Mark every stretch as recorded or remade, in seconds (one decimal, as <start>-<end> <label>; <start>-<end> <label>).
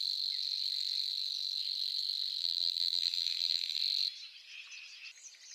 0.0-2.4 recorded; 2.4-3.8 remade; 3.8-5.5 recorded